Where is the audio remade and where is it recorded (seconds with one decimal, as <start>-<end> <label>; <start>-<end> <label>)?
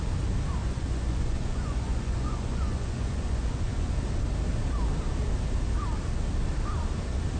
0.0-0.6 recorded; 0.6-3.9 remade; 3.9-7.4 recorded